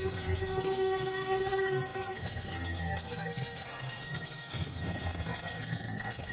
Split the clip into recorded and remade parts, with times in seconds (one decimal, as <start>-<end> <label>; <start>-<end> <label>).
0.0-6.3 remade